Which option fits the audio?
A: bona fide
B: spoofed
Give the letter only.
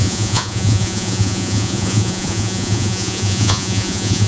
B